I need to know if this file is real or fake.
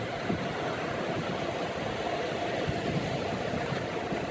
real